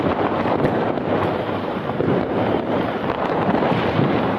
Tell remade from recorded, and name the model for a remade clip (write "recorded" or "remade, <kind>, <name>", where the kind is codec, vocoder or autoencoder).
remade, vocoder, BigVGAN v2